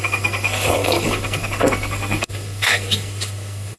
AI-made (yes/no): yes